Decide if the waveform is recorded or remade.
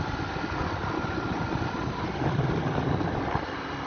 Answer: recorded